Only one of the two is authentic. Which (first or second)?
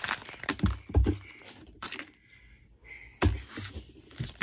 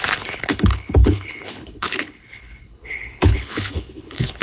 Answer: first